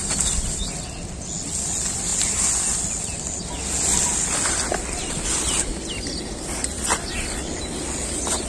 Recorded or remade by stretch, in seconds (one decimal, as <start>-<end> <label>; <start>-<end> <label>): 0.0-8.5 recorded